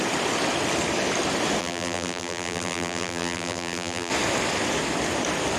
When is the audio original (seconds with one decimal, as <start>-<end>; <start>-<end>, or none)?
0.0-1.6; 4.1-5.6